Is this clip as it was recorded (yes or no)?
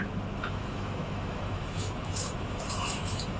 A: no